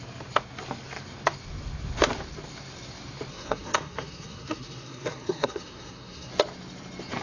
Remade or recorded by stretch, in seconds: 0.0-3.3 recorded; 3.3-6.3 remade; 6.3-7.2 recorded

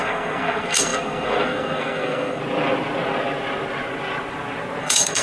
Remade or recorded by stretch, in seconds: 0.0-2.4 remade; 2.4-4.8 recorded; 4.8-5.2 remade

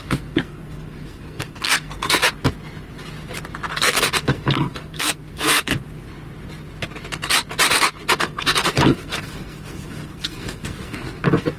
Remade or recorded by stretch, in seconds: 0.0-2.2 remade; 2.2-3.7 recorded; 3.7-5.7 remade; 5.7-8.2 recorded; 8.2-11.6 remade

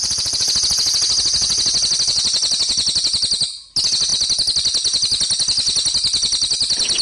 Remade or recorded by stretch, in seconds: 0.0-7.0 recorded

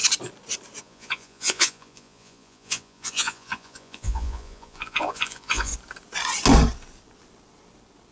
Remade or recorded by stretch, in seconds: 0.0-0.8 recorded; 0.8-5.7 remade; 5.7-8.1 recorded